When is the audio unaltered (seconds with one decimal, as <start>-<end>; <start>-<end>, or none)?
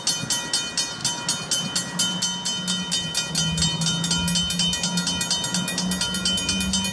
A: 0.0-6.9